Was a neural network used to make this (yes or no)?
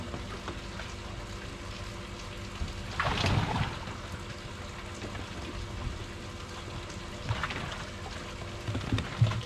no